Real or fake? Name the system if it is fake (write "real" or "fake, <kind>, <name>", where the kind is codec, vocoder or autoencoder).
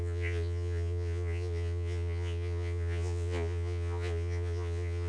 fake, vocoder, Vocos